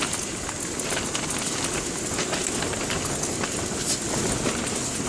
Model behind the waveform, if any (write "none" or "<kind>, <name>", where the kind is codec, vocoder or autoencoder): none